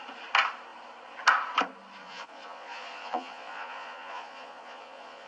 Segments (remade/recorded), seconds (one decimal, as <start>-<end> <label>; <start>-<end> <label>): 0.0-2.0 recorded; 2.0-5.3 remade